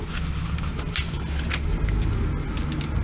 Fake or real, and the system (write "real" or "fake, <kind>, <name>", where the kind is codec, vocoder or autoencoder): real